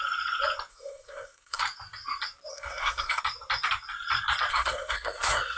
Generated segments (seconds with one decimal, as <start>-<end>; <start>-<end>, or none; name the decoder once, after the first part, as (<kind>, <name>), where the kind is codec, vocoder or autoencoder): 0.7-1.6 (codec, SNAC); 2.5-3.2; 4.5-5.6